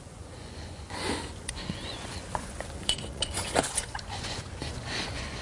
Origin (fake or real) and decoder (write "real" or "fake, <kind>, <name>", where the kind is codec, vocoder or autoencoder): fake, vocoder, Vocos